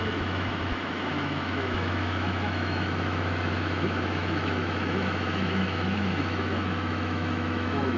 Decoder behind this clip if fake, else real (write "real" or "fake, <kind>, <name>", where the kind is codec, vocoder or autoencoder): fake, autoencoder, DAC-VAE